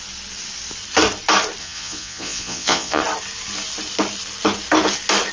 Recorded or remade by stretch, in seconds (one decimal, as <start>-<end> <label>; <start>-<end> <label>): 0.0-1.6 recorded; 1.6-3.0 remade; 3.0-5.3 recorded